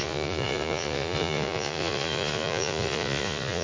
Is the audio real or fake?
fake